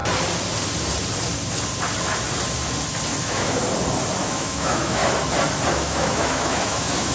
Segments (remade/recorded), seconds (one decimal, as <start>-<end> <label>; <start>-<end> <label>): 0.0-3.2 recorded; 3.2-3.6 remade; 3.6-4.2 recorded; 4.2-5.0 remade; 5.0-5.7 recorded; 5.7-7.1 remade